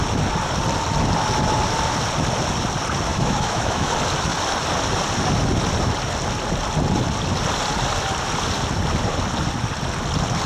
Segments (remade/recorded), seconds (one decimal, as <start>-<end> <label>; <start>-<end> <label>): 0.0-3.1 recorded; 3.1-3.9 remade; 3.9-10.5 recorded